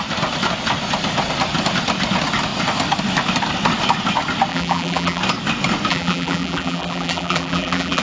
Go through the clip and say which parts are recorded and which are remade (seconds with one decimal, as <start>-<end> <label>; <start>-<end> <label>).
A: 0.0-4.5 recorded; 4.5-5.2 remade; 5.2-5.9 recorded; 5.9-8.0 remade